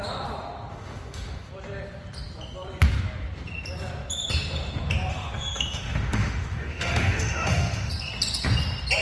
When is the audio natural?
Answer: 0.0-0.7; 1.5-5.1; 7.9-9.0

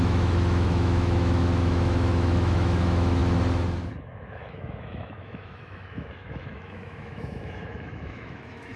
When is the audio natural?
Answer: 3.2-4.0

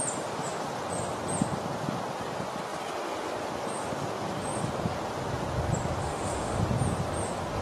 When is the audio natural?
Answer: 0.0-6.0; 6.6-7.6

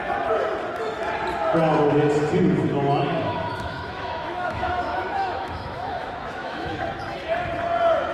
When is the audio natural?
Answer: 0.0-2.7; 6.8-8.1

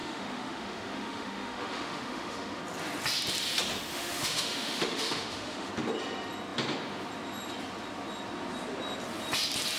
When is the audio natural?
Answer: 2.6-3.9; 5.7-9.8